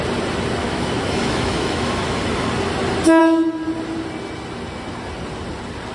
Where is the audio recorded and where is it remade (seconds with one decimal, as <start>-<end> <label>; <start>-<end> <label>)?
0.0-0.6 recorded; 0.6-2.2 remade; 2.2-5.9 recorded